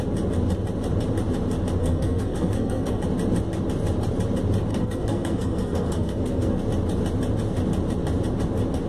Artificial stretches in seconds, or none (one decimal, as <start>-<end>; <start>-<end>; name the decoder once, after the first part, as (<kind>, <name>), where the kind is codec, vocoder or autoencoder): 1.8-3.0 (codec, SNAC); 4.7-6.6